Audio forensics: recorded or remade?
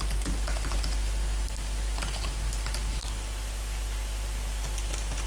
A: recorded